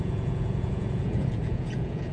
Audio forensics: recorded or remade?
remade